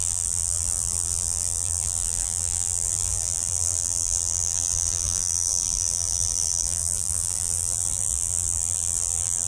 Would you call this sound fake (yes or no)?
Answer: yes